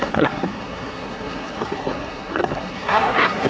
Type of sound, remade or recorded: remade